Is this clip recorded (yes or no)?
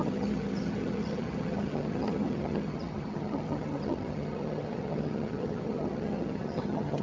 no